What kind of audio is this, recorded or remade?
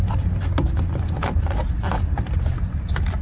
recorded